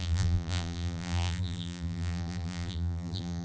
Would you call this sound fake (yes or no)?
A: yes